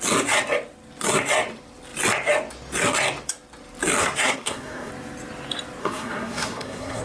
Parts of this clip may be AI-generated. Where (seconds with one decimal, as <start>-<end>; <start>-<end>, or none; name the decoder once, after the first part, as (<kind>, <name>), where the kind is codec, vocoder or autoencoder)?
4.0-4.9 (codec, SNAC); 5.8-7.0